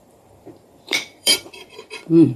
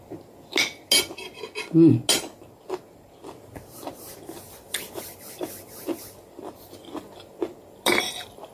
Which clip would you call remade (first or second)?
first